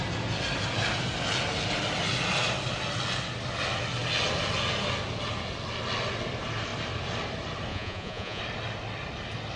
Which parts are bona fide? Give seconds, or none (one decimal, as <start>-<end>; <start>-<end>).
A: 0.0-7.7; 8.4-9.6